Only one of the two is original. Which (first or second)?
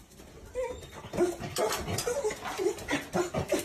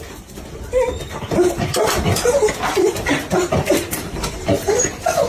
first